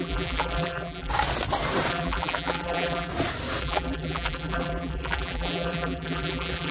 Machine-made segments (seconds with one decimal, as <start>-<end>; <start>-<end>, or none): 0.0-1.1; 1.9-3.1; 3.6-6.7